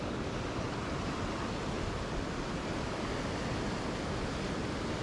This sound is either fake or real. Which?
real